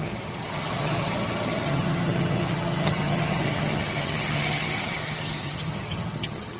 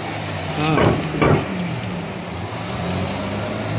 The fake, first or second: first